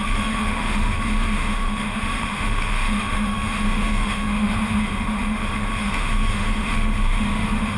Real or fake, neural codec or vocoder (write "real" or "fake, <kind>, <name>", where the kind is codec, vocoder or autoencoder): fake, autoencoder, DAC-VAE